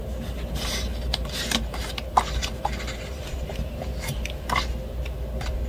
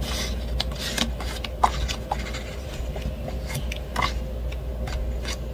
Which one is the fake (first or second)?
first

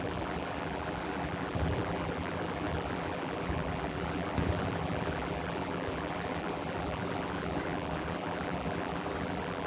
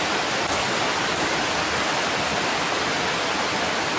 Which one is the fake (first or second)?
first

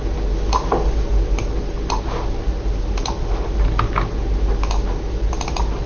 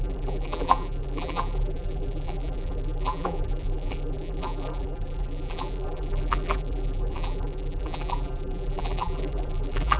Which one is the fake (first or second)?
second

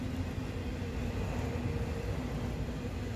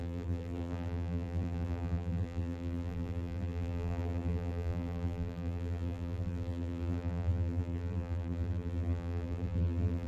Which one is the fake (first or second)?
second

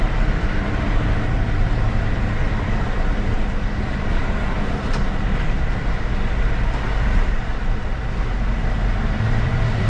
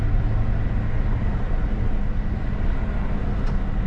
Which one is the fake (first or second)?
first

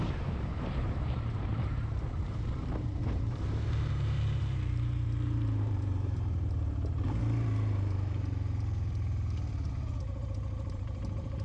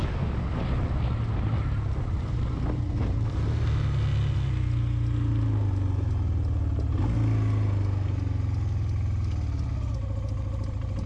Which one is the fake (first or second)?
first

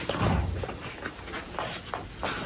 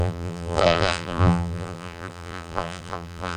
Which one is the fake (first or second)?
second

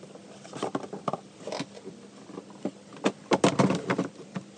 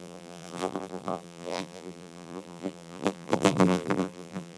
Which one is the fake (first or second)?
second